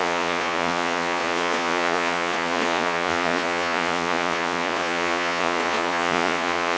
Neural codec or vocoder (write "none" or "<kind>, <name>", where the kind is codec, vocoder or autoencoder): vocoder, Vocos